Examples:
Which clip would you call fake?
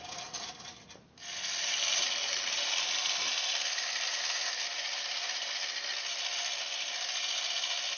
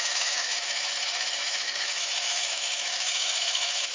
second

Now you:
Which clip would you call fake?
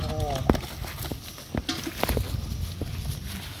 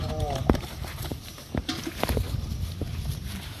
second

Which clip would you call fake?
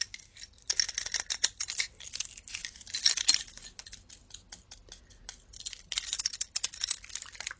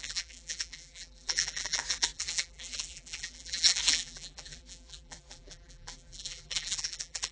second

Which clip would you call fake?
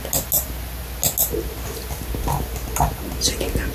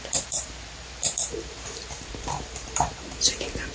second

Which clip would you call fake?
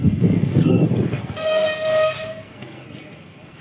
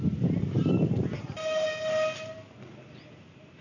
first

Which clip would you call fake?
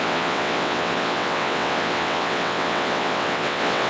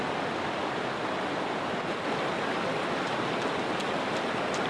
first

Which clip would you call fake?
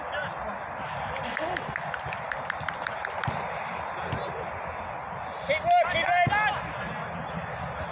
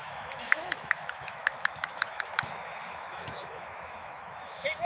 second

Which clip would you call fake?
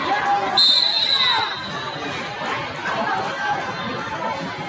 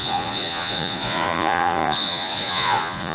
second